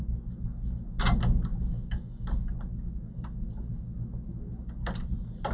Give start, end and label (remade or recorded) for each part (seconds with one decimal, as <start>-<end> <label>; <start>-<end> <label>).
0.0-5.5 recorded

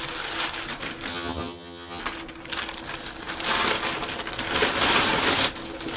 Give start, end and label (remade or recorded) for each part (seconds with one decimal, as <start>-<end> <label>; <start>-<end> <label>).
0.0-1.1 recorded; 1.1-2.0 remade; 2.0-6.0 recorded